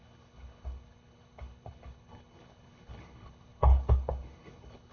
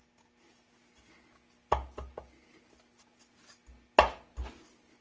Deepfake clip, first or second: first